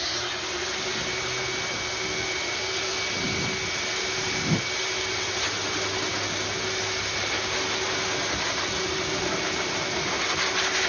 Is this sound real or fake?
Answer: real